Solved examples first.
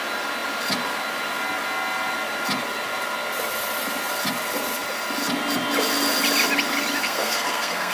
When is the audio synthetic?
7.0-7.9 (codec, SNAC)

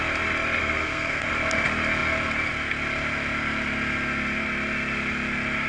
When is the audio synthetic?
0.6-1.3 (codec, SNAC)

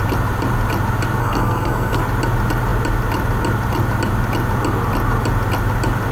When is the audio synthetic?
1.2-2.0 (codec, SNAC)

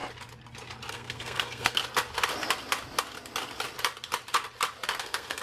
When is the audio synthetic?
0.9-1.8 (codec, SNAC); 5.0-5.4